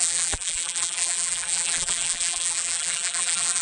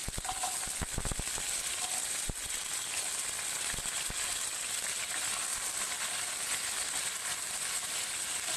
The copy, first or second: first